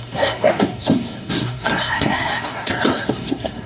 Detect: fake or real fake